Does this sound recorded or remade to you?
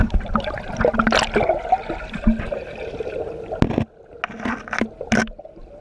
recorded